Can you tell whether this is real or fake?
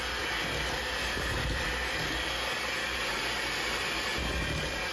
real